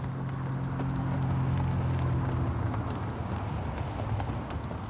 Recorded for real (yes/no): yes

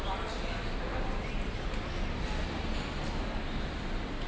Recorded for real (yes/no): yes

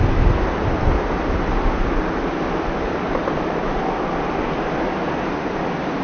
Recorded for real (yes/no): yes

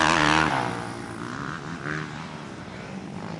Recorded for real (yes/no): yes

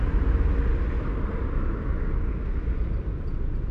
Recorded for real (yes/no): yes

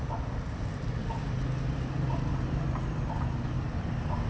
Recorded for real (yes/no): yes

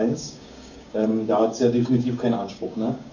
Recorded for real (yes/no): no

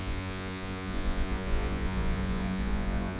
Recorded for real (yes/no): no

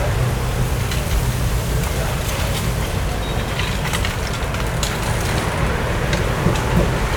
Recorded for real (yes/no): yes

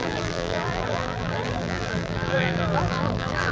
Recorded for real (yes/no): no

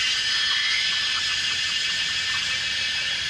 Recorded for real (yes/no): yes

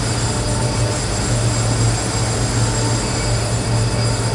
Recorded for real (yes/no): yes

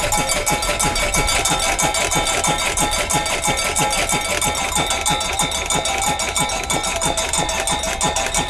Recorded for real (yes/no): yes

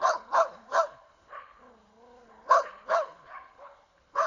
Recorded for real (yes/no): no